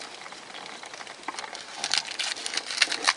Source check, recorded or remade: recorded